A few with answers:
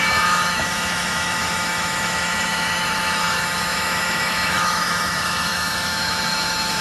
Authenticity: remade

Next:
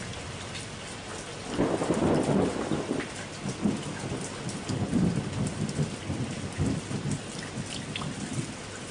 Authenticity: recorded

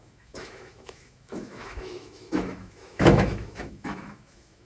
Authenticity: remade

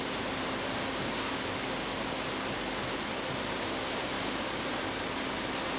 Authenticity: recorded